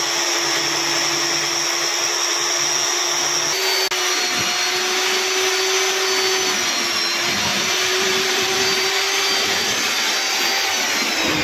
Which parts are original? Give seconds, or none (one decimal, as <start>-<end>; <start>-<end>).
0.0-7.5; 8.9-11.4